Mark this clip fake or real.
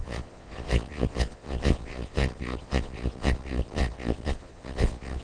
fake